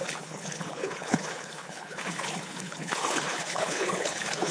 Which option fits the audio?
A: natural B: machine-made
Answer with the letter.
B